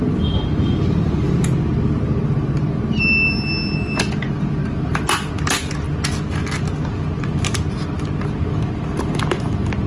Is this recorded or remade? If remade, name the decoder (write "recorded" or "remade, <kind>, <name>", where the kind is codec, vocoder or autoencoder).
recorded